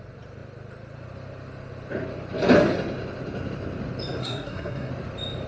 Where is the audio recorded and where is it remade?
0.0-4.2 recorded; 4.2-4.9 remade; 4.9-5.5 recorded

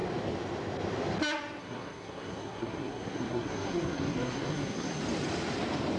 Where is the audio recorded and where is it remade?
0.0-1.6 recorded; 1.6-5.0 remade; 5.0-6.0 recorded

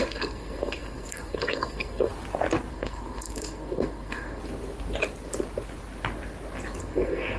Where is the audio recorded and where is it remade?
0.0-2.1 remade; 2.1-2.7 recorded; 2.7-4.4 remade; 4.4-6.8 recorded; 6.8-7.4 remade

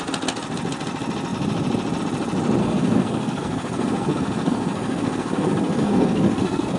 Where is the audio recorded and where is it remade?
0.0-2.6 recorded; 2.6-6.8 remade

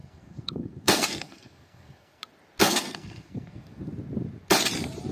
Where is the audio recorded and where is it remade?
0.0-2.2 remade; 2.2-2.6 recorded; 2.6-3.9 remade; 3.9-5.1 recorded